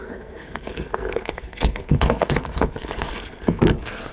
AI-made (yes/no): yes